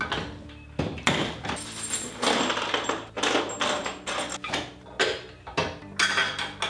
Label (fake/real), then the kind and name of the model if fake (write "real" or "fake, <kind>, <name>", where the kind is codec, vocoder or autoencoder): real